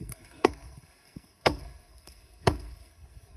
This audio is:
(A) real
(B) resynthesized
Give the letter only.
B